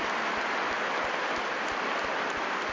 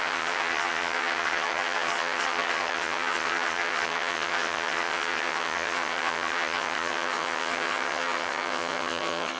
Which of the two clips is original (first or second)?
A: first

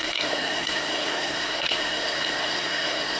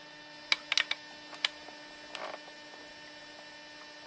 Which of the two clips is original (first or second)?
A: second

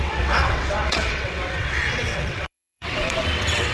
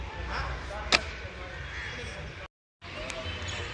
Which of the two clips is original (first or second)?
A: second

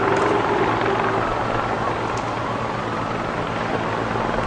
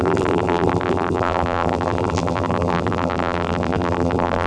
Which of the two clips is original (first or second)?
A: first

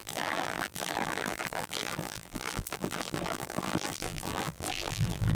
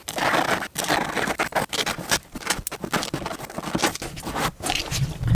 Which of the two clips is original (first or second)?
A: second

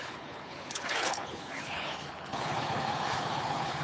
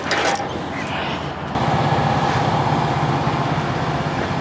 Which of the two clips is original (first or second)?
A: second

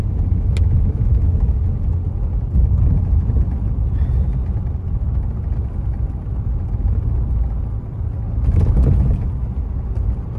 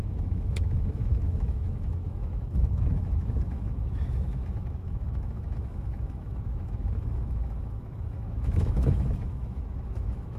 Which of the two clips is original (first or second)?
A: first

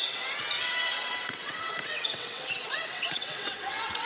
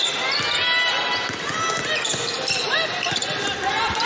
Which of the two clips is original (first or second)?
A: second